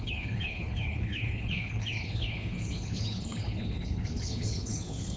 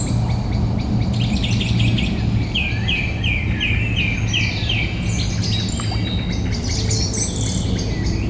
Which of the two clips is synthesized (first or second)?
first